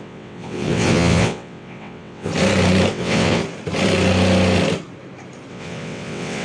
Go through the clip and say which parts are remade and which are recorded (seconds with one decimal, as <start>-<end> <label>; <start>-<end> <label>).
0.0-2.3 remade; 2.3-2.9 recorded; 2.9-3.4 remade; 3.4-5.5 recorded; 5.5-6.4 remade